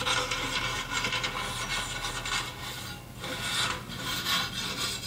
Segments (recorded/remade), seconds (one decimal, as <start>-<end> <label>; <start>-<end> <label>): 0.0-1.7 recorded; 1.7-4.5 remade; 4.5-5.1 recorded